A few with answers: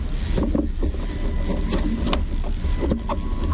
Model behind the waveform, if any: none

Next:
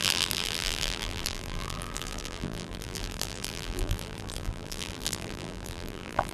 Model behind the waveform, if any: vocoder, BigVGAN v2